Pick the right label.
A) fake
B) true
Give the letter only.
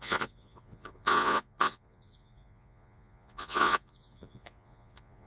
A